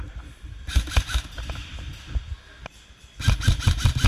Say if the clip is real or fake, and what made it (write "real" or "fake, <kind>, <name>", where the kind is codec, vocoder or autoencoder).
real